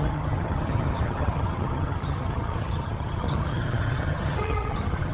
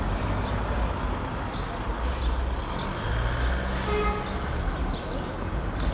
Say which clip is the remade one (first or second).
first